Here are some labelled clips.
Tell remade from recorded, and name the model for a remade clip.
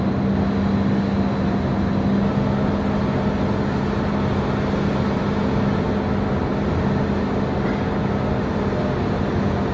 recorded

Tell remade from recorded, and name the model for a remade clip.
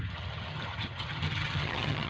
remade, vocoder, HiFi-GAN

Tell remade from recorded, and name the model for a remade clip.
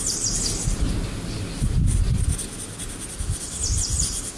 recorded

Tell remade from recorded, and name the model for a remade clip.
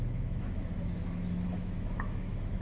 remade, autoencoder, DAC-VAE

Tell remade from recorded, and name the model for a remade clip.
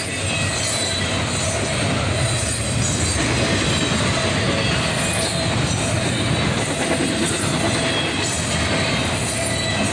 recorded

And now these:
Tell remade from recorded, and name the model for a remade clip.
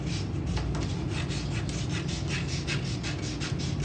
recorded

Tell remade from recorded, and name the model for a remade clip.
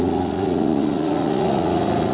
remade, vocoder, Vocos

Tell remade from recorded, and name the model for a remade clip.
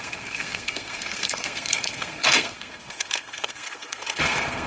remade, codec, SNAC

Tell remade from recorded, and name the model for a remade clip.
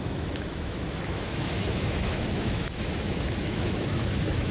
remade, autoencoder, DAC-VAE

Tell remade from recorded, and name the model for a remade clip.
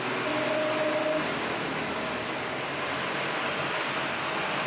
recorded